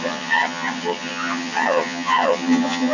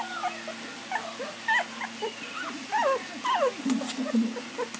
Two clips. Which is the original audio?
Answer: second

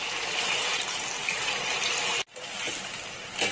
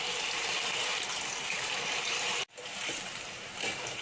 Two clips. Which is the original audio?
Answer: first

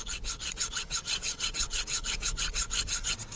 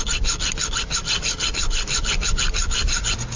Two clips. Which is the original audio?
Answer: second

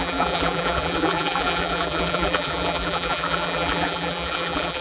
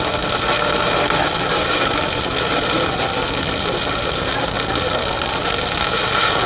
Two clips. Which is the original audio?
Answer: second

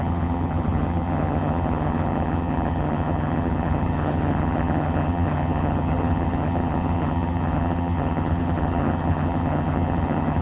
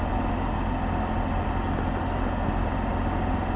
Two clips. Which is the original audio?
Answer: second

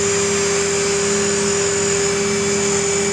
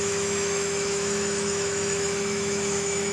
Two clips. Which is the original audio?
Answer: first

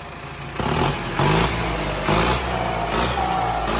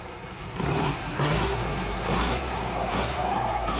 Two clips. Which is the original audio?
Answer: first